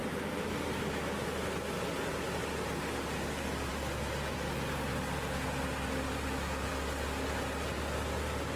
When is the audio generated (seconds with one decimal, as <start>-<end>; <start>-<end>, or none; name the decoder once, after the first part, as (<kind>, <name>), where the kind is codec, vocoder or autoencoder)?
none